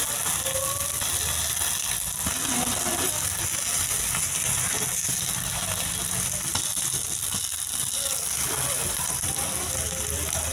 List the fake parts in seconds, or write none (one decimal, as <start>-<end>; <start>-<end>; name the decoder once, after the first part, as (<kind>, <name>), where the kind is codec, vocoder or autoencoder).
none